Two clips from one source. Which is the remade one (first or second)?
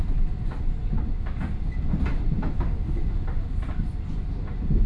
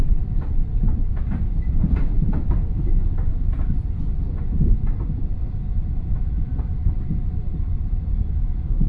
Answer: second